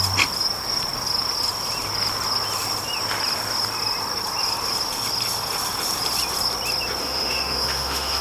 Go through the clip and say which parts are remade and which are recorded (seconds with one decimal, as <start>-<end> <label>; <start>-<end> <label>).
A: 0.0-7.0 recorded; 7.0-8.2 remade